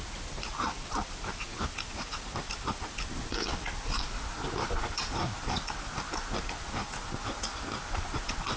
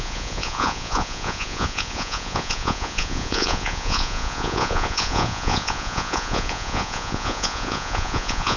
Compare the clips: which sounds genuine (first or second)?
first